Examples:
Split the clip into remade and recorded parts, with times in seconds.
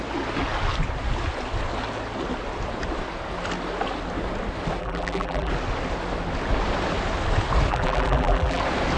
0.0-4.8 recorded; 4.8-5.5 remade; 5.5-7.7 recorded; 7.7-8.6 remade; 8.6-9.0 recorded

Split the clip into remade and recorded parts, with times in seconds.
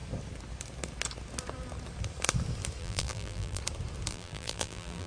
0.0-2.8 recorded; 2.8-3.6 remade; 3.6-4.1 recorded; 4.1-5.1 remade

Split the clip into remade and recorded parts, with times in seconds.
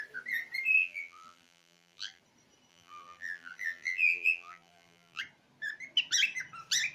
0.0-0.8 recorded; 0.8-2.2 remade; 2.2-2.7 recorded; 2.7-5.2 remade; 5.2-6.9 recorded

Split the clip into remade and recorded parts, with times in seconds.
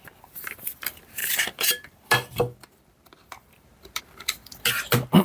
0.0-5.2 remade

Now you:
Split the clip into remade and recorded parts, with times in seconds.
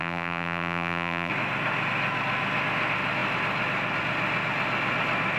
0.0-1.3 remade; 1.3-5.4 recorded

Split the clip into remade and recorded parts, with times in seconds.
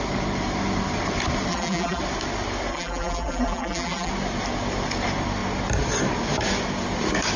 0.0-1.5 recorded; 1.5-2.0 remade; 2.0-2.7 recorded; 2.7-4.1 remade; 4.1-7.4 recorded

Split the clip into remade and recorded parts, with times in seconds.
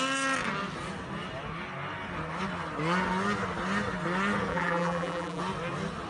0.0-4.5 recorded; 4.5-5.4 remade; 5.4-6.1 recorded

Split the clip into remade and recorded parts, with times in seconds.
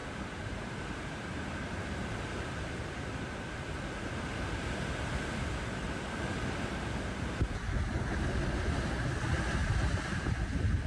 0.0-2.8 remade; 2.8-9.6 recorded; 9.6-10.3 remade; 10.3-10.9 recorded